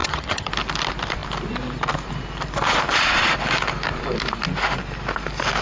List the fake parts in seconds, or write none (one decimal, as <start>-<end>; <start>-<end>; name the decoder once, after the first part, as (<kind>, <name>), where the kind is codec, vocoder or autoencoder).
0.0-0.5 (vocoder, HiFi-GAN)